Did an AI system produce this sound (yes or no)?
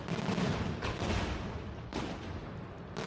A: no